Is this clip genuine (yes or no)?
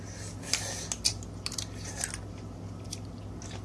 yes